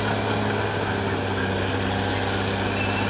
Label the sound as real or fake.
real